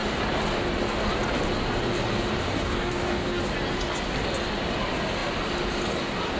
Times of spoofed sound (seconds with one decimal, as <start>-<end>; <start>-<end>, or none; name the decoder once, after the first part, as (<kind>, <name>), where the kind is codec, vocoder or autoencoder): 2.5-3.4 (codec, DAC)